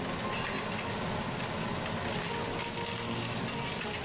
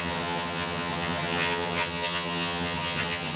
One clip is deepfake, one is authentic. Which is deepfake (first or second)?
second